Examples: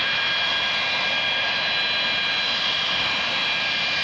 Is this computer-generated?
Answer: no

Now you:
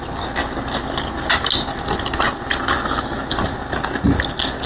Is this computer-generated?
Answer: no